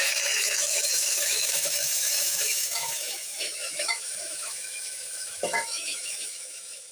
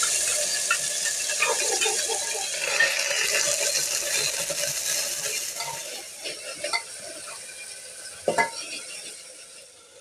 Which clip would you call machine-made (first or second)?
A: first